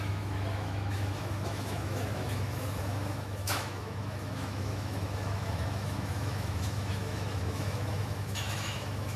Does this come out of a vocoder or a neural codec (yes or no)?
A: yes